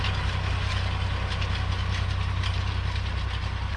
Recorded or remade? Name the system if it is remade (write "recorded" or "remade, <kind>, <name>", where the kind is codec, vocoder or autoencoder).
recorded